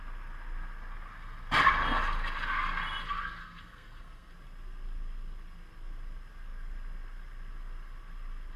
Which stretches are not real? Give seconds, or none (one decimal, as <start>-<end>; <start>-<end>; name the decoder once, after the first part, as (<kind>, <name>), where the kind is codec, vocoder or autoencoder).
3.4-4.3 (codec, SNAC)